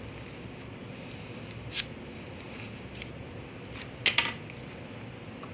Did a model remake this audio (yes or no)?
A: no